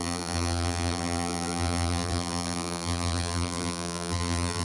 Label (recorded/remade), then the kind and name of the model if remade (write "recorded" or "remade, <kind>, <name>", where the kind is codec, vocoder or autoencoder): remade, vocoder, BigVGAN v2